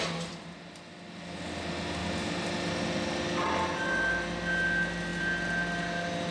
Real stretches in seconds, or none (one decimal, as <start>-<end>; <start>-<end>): 0.0-6.3